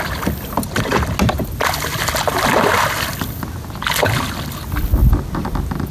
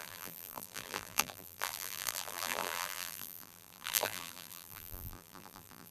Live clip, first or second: first